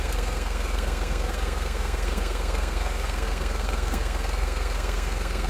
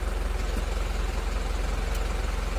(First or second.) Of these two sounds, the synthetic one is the first